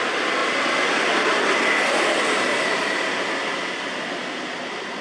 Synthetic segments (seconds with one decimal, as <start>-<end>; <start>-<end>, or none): none